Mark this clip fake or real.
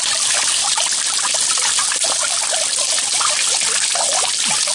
real